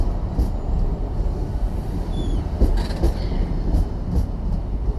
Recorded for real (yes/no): yes